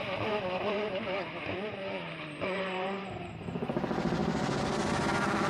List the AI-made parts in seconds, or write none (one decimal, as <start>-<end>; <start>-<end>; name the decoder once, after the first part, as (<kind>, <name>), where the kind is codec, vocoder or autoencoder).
0.0-3.3 (vocoder, BigVGAN v2)